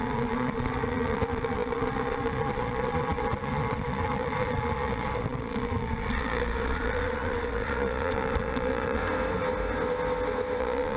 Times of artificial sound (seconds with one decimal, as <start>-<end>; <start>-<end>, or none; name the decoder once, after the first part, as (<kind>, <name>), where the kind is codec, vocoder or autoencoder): 0.0-9.0 (vocoder, Vocos); 10.6-11.0